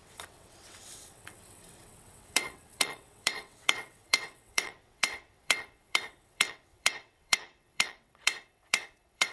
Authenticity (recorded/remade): remade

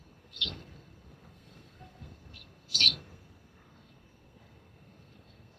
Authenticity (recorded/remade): remade